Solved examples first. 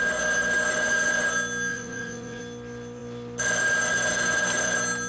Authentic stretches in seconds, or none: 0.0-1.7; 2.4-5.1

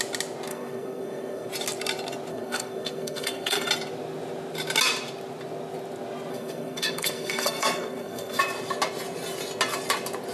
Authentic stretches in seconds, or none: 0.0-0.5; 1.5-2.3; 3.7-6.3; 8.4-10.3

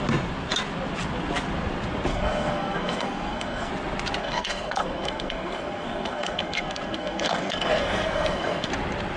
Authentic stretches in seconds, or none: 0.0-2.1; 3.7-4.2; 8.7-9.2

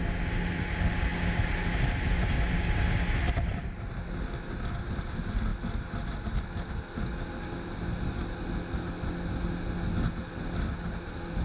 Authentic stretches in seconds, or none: 0.0-11.4